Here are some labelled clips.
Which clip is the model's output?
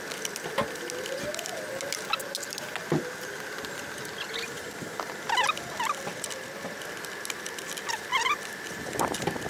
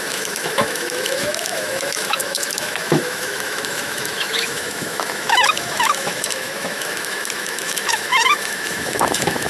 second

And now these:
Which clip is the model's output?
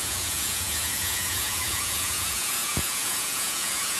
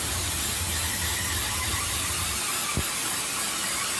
first